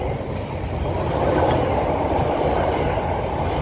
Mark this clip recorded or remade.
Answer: recorded